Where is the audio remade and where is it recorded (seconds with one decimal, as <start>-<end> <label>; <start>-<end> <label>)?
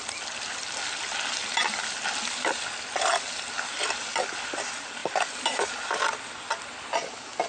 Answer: 0.0-7.5 recorded